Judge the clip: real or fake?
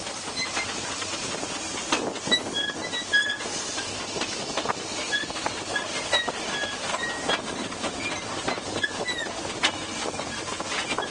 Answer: real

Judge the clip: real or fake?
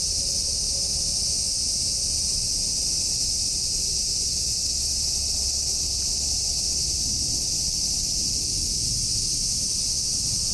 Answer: real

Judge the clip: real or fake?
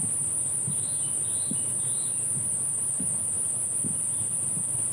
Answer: real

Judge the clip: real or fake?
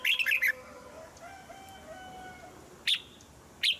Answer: real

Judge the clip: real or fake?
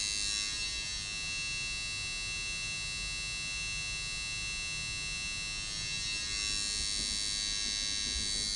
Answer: real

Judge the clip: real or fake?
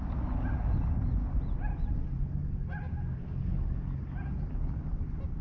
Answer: real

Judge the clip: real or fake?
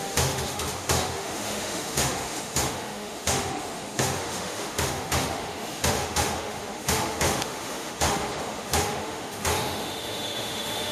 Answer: fake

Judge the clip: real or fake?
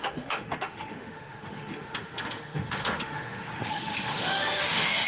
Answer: fake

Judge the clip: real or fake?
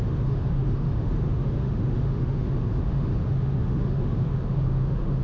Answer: fake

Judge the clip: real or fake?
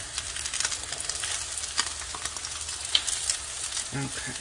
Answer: real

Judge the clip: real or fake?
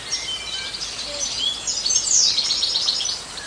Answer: real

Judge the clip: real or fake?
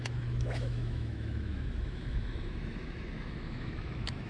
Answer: fake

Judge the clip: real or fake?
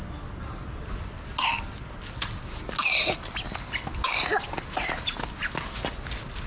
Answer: real